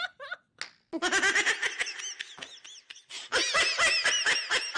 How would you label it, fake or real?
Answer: real